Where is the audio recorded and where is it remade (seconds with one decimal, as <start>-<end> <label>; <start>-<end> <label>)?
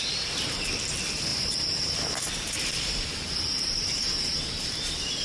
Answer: 0.0-1.3 recorded; 1.3-4.4 remade; 4.4-5.2 recorded